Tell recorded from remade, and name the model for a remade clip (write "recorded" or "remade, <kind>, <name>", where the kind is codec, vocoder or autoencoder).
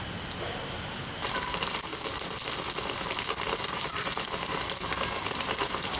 recorded